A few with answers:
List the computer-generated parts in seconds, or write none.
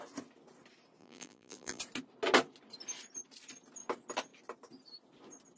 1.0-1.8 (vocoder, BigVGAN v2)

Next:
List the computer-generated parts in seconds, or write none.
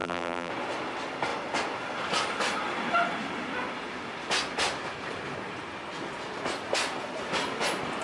0.0-0.5 (vocoder, BigVGAN v2)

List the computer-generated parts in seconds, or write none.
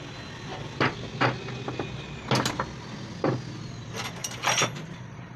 4.2-5.4 (vocoder, BigVGAN v2)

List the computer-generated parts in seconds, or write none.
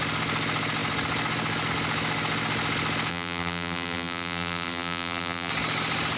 3.1-5.5 (vocoder, BigVGAN v2)